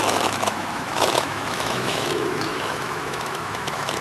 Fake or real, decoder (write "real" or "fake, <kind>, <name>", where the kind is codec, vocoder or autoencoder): fake, autoencoder, DAC-VAE